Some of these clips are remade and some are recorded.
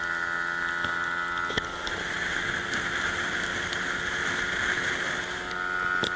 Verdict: recorded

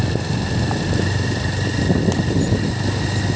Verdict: recorded